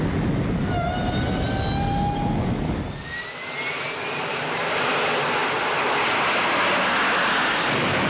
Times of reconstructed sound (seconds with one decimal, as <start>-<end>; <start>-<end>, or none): none